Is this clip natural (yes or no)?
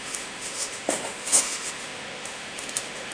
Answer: no